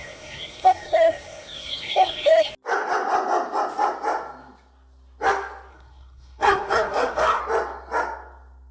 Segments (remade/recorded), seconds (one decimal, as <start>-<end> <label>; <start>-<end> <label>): 0.0-2.5 remade; 2.5-5.7 recorded; 5.7-7.4 remade; 7.4-8.7 recorded

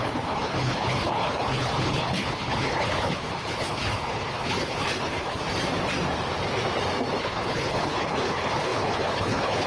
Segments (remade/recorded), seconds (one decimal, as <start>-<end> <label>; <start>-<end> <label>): 0.0-5.4 remade; 5.4-7.2 recorded; 7.2-9.7 remade

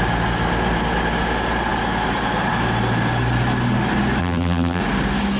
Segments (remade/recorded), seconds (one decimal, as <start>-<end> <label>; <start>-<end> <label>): 0.0-4.2 recorded; 4.2-4.8 remade; 4.8-5.4 recorded